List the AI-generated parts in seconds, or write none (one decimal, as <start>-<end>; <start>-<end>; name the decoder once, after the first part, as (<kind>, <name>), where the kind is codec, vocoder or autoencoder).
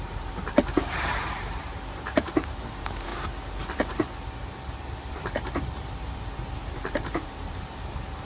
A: 0.0-3.1 (vocoder, BigVGAN v2); 5.1-8.2